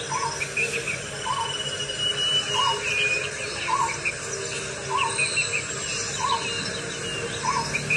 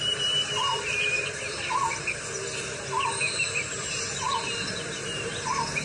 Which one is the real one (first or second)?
first